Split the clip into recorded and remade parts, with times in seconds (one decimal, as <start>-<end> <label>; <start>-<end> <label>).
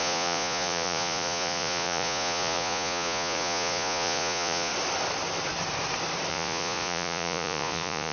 0.0-4.7 remade; 4.7-6.3 recorded; 6.3-8.1 remade